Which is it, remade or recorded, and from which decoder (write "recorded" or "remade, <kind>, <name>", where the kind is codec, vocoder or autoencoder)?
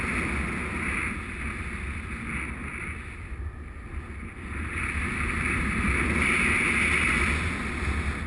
recorded